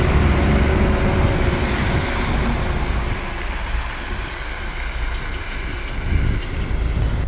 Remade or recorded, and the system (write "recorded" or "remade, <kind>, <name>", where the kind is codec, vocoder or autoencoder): recorded